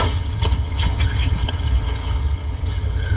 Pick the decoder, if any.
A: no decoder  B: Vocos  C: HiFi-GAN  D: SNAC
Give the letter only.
C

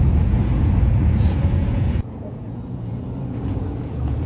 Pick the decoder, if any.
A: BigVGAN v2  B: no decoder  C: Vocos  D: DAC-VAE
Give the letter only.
C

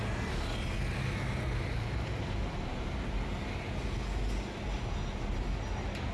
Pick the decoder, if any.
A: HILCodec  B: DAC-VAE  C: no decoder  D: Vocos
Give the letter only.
C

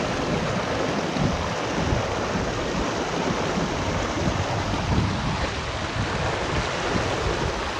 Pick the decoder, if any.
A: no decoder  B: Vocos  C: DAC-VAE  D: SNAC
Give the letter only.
A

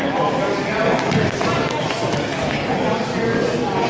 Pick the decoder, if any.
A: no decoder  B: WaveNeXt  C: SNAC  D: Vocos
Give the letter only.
A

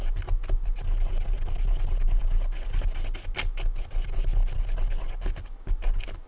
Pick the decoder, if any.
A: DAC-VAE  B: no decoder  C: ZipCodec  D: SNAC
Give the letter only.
B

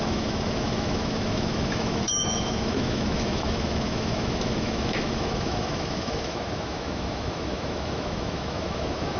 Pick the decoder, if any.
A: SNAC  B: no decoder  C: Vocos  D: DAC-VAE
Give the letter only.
D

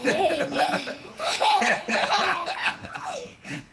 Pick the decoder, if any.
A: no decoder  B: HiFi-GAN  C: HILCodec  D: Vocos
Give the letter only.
C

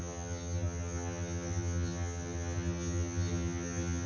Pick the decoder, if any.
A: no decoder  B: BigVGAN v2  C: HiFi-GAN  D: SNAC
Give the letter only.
C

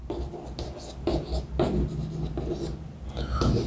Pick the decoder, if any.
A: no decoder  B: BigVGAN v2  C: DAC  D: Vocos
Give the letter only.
A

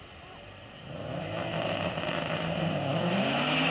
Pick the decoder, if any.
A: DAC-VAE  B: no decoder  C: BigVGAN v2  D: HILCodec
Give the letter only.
B